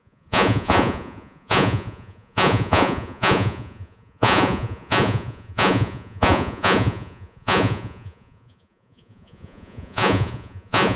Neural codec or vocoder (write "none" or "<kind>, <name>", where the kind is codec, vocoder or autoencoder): vocoder, Vocos